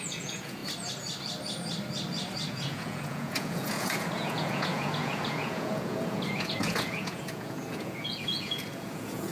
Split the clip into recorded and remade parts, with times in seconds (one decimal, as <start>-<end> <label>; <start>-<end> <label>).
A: 0.0-0.6 remade; 0.6-2.5 recorded; 2.5-9.3 remade